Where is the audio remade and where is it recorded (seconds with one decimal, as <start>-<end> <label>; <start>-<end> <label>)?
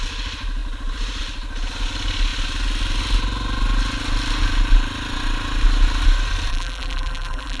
0.0-6.5 recorded; 6.5-7.6 remade